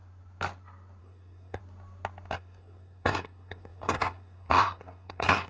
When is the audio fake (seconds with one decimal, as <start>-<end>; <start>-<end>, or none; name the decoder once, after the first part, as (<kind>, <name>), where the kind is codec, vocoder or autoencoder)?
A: 1.0-1.6 (codec, SNAC); 2.3-5.5